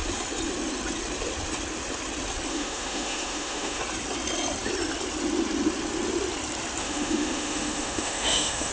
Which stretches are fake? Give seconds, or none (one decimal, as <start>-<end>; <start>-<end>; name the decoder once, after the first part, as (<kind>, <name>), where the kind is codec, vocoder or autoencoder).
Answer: 2.5-3.8 (autoencoder, DAC-VAE); 6.8-8.7